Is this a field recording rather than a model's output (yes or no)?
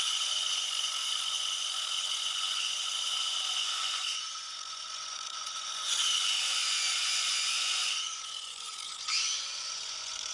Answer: no